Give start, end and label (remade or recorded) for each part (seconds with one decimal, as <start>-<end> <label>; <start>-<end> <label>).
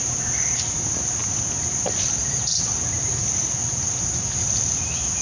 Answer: 0.0-5.2 recorded